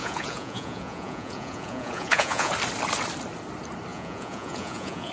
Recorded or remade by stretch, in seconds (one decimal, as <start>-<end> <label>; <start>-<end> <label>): 0.0-2.5 remade; 2.5-3.9 recorded; 3.9-5.1 remade